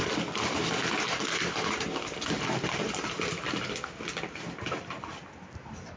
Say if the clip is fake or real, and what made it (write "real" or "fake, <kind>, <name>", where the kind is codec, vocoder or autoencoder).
real